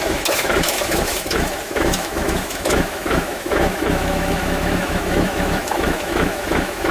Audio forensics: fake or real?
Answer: fake